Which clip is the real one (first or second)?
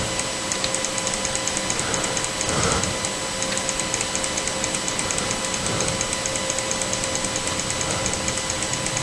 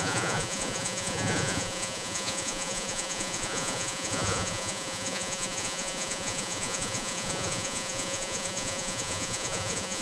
first